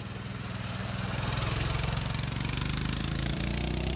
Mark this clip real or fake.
fake